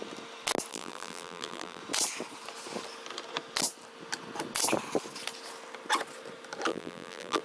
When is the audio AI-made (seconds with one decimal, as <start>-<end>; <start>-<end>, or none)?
0.7-1.8; 6.7-7.4